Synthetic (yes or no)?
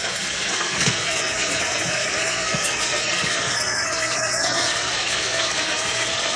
yes